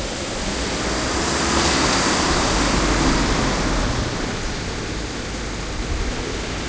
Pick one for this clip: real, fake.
real